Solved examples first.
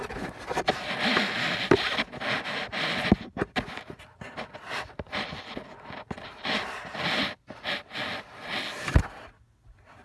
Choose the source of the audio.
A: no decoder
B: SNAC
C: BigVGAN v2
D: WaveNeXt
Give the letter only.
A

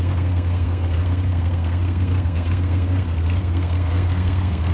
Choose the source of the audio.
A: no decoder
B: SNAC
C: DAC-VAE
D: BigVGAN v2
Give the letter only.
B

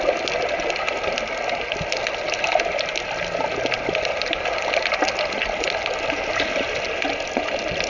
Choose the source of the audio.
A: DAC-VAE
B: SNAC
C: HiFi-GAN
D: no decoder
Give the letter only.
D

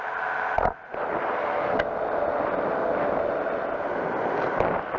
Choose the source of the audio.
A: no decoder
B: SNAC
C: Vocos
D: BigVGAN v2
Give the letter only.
A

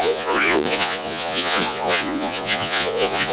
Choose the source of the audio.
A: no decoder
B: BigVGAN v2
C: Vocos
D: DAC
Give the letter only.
C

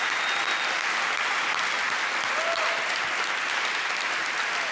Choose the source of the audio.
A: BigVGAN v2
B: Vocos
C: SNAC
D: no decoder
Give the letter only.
D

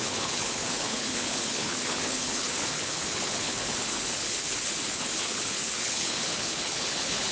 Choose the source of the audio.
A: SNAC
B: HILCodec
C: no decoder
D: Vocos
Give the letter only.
B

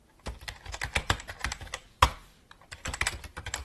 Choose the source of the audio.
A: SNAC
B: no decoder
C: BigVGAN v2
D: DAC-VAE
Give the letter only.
B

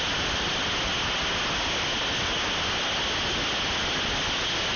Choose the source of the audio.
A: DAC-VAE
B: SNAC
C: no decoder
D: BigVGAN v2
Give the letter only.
C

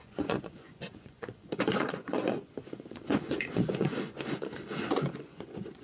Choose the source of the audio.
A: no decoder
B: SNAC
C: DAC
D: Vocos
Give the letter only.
D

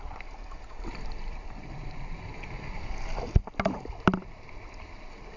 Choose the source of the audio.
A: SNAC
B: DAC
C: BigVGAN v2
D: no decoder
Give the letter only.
D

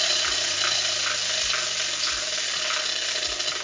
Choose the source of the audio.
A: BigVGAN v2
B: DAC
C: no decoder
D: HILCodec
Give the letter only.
C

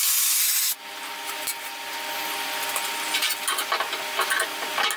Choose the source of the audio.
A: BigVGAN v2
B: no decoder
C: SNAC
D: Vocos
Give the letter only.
B